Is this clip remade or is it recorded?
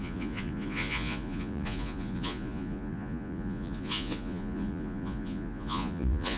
remade